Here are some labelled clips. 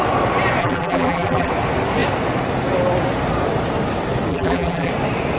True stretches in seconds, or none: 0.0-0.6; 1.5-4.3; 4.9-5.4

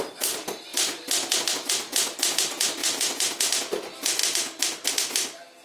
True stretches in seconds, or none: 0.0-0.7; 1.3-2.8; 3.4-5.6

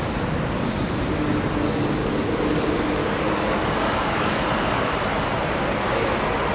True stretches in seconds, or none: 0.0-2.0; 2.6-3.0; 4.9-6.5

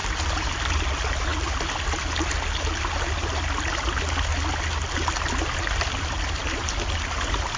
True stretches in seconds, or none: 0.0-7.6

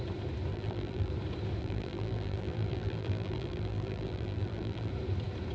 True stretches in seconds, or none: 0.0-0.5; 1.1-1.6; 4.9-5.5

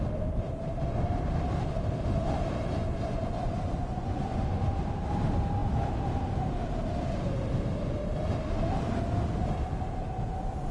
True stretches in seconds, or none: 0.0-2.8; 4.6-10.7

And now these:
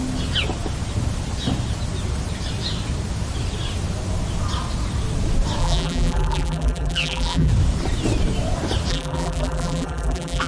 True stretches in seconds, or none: 0.0-5.6; 7.5-8.9

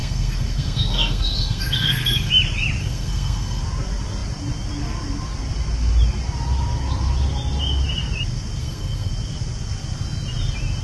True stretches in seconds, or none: 2.3-2.8; 3.6-8.6; 9.1-10.8